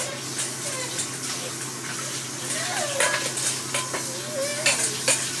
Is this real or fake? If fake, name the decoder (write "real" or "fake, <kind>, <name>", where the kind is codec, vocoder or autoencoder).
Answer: real